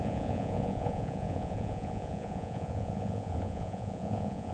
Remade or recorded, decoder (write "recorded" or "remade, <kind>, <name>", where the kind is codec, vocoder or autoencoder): remade, vocoder, Vocos